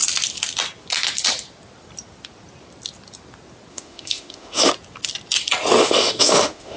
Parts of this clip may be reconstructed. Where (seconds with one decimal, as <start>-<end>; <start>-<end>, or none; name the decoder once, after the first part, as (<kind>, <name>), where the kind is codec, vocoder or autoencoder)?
3.7-4.7 (autoencoder, DAC-VAE); 5.8-6.8